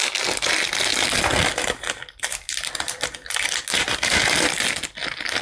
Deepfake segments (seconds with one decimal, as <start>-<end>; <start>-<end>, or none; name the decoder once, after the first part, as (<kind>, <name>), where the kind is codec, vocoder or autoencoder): none